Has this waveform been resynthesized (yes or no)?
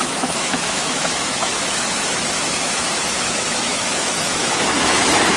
yes